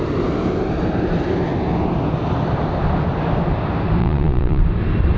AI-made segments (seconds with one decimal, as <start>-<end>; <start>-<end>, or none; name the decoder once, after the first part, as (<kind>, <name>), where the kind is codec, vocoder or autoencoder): 4.0-4.6 (vocoder, Vocos)